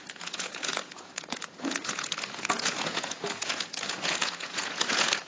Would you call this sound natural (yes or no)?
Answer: no